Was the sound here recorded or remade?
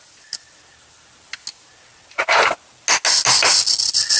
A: recorded